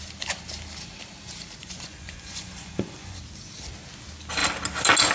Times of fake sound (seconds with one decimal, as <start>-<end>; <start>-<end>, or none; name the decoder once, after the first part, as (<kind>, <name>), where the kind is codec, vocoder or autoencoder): 1.6-3.2 (vocoder, Vocos)